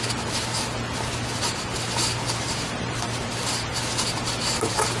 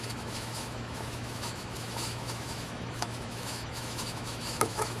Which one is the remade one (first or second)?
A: second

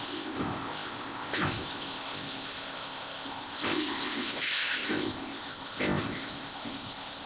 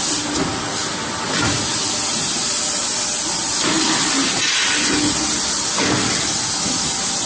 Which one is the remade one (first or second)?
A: first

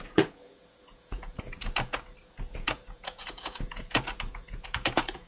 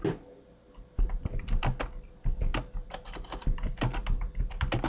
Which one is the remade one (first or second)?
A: first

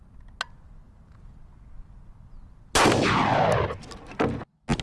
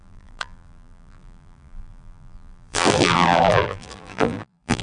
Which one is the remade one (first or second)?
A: second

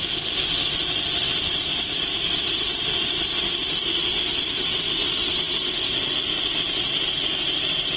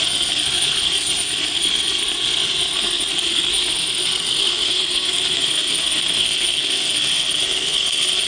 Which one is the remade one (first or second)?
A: second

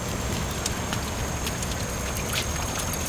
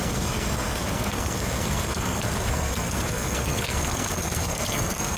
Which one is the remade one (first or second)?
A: second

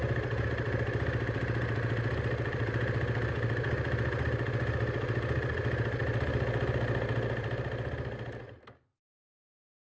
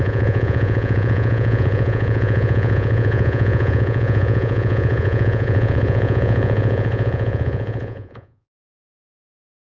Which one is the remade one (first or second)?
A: second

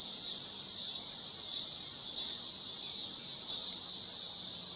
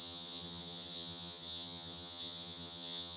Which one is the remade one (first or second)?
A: second